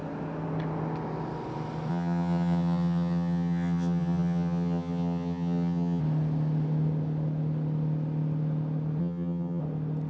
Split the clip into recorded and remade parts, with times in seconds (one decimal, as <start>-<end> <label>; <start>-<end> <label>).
0.0-1.9 recorded; 1.9-6.0 remade; 6.0-9.0 recorded; 9.0-9.6 remade; 9.6-10.1 recorded